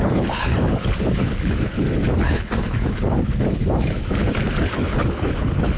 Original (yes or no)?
no